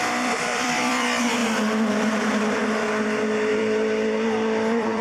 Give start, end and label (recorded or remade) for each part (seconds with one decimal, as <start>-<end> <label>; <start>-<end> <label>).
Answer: 0.0-1.4 remade; 1.4-1.9 recorded; 1.9-2.6 remade; 2.6-3.5 recorded; 3.5-5.0 remade